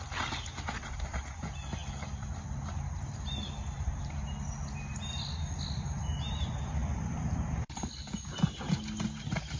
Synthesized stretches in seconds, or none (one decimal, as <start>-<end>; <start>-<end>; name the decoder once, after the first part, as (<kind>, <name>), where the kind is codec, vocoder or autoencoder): none